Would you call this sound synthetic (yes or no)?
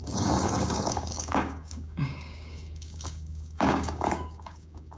yes